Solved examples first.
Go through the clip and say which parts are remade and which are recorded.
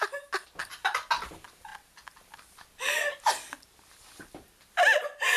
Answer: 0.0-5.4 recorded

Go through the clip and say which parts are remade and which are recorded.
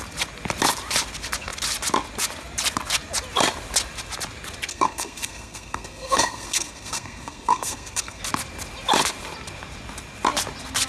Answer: 0.0-4.7 recorded; 4.7-8.2 remade; 8.2-10.9 recorded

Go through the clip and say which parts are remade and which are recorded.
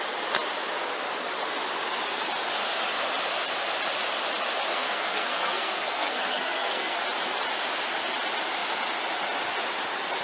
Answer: 0.0-4.7 recorded; 4.7-7.0 remade; 7.0-10.2 recorded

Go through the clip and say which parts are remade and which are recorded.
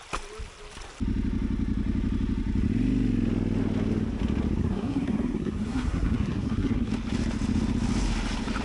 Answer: 0.0-4.6 recorded; 4.6-6.9 remade; 6.9-8.6 recorded